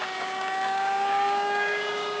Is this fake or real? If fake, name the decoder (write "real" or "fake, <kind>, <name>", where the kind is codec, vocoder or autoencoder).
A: fake, codec, DAC